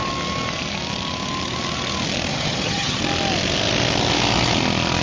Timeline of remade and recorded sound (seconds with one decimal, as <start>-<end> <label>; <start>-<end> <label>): 0.0-2.3 recorded; 2.3-3.0 remade; 3.0-5.0 recorded